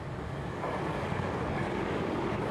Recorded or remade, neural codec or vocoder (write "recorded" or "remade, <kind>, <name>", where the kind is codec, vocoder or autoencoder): remade, codec, DAC